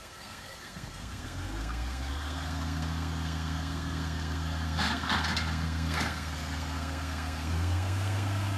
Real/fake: fake